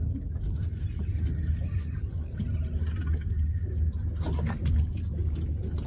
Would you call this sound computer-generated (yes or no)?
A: no